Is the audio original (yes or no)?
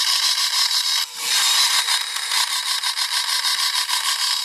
yes